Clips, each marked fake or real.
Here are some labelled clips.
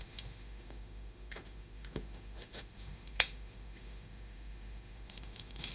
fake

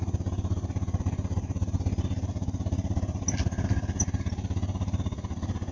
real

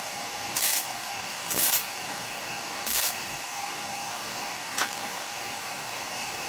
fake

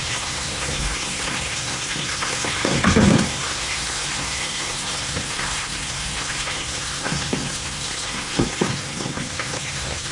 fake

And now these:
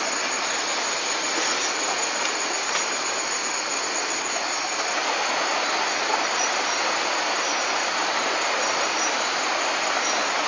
real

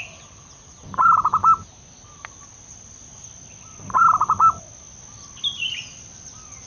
real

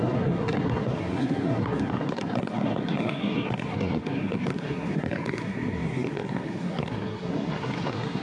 fake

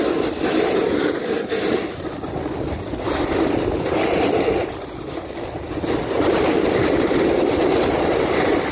real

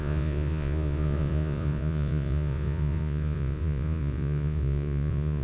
fake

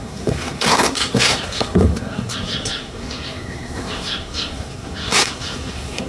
fake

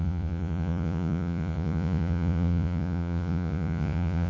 fake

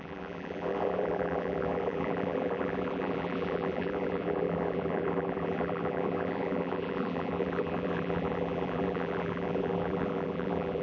fake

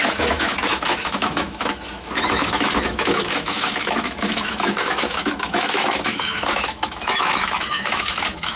fake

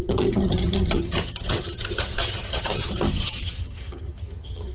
fake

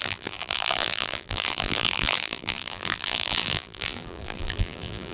fake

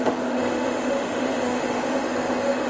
fake